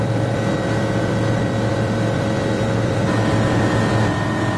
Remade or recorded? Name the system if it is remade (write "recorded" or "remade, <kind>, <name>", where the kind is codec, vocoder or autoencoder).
remade, vocoder, BigVGAN v2